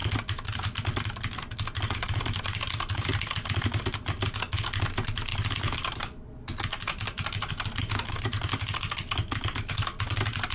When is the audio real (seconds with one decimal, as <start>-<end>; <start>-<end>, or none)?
0.0-10.5